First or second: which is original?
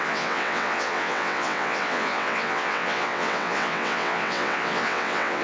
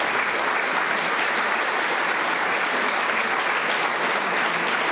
second